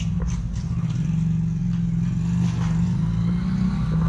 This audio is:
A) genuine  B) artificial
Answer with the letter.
A